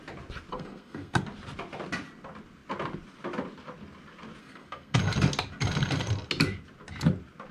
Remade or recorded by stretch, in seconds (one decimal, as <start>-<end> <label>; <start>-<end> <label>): 0.0-0.5 recorded; 0.5-1.2 remade; 1.2-4.4 recorded; 4.4-5.0 remade; 5.0-7.5 recorded